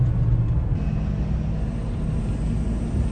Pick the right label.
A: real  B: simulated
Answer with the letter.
A